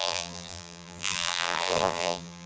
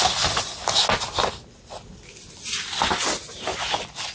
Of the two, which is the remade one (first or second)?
first